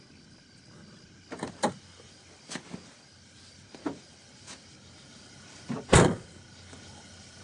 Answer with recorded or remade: recorded